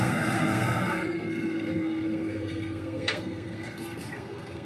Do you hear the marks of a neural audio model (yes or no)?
yes